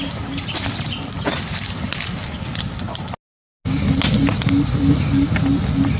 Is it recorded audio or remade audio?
recorded